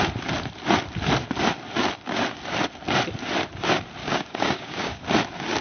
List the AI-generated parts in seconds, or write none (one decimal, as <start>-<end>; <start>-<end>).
4.0-5.0